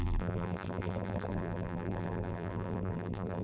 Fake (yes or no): yes